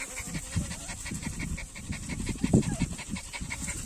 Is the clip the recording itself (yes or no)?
no